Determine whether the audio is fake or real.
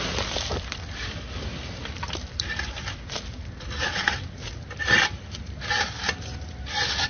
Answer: fake